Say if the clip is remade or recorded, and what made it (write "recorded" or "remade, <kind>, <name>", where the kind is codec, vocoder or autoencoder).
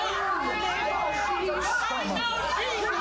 recorded